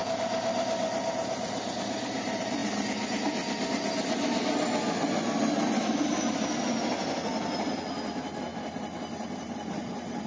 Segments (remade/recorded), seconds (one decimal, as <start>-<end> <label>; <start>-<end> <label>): 0.0-2.6 remade; 2.6-5.8 recorded; 5.8-8.5 remade; 8.5-9.1 recorded; 9.1-10.3 remade